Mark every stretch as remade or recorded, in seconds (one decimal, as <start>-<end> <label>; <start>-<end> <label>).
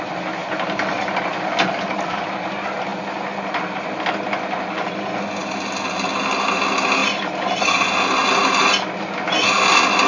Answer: 0.0-10.1 recorded